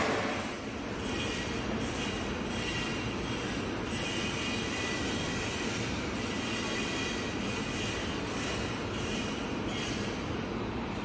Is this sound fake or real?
fake